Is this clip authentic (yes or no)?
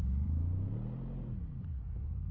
no